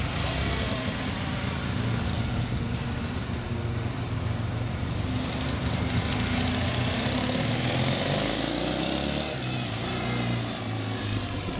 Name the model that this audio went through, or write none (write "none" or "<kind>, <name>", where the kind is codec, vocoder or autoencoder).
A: none